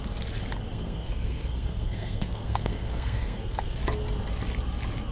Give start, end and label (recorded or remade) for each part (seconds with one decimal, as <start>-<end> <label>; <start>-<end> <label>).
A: 0.0-0.7 recorded; 0.7-3.8 remade; 3.8-5.1 recorded